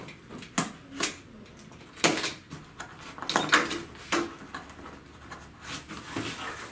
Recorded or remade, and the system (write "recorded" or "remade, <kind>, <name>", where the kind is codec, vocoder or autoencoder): recorded